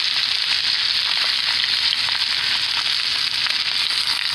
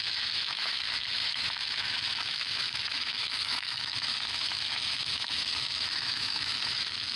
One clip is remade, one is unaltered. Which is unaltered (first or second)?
first